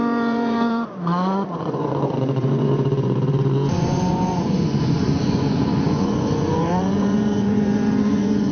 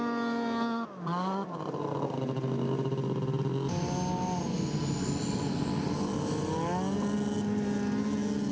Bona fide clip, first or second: second